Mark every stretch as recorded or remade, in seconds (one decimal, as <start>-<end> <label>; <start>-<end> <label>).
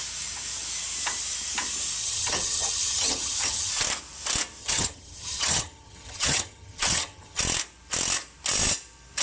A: 0.0-2.0 recorded; 2.0-3.7 remade; 3.7-4.6 recorded; 4.6-7.4 remade; 7.4-9.2 recorded